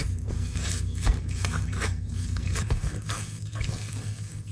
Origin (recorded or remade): remade